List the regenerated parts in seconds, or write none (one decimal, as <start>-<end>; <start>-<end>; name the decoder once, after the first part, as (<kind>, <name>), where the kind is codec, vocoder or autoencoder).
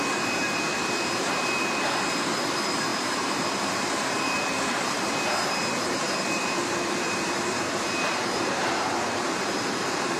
0.0-10.2 (vocoder, BigVGAN v2)